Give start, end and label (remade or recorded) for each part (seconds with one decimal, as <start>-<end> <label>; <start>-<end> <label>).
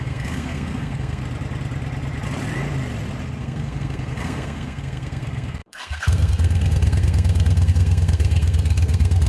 0.0-1.2 remade; 1.2-3.4 recorded; 3.4-9.3 remade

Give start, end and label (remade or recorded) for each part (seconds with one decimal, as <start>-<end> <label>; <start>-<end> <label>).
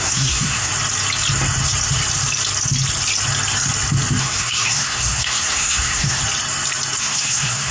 0.0-0.7 remade; 0.7-4.2 recorded; 4.2-6.2 remade; 6.2-7.0 recorded; 7.0-7.7 remade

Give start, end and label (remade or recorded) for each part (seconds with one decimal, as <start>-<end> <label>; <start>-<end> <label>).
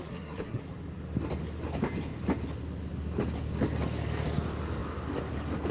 0.0-0.6 remade; 0.6-5.7 recorded